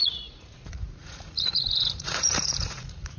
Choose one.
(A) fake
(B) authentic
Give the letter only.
A